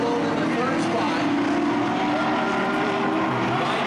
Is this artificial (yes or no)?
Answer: no